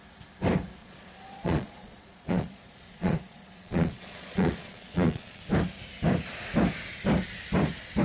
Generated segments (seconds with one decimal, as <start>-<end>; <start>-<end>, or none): 0.8-5.4